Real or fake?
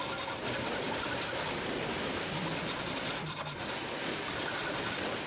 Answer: fake